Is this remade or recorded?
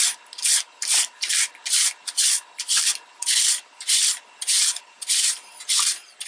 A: recorded